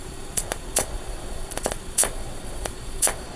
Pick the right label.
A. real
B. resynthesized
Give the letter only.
B